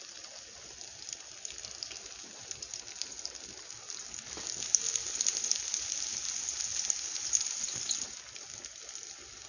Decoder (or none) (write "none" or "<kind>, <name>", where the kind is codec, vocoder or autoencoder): none